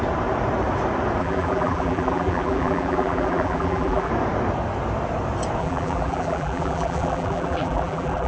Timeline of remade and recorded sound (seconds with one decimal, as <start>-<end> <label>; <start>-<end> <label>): 0.0-1.2 recorded; 1.2-4.1 remade; 4.1-5.6 recorded; 5.6-8.3 remade